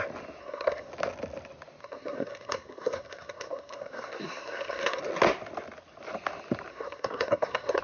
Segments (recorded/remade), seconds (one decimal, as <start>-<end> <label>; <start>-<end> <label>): 0.0-0.4 recorded; 0.4-0.9 remade; 0.9-1.8 recorded; 1.8-5.0 remade; 5.0-6.7 recorded; 6.7-7.8 remade